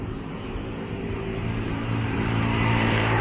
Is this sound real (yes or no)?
no